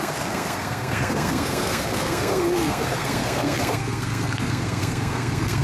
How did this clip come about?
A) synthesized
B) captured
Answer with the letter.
A